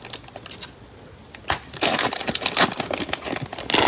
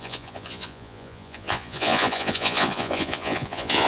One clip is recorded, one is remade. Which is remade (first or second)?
second